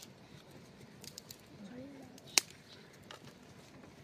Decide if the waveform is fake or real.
real